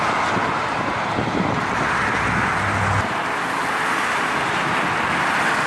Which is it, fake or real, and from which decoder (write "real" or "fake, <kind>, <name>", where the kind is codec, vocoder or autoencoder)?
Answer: real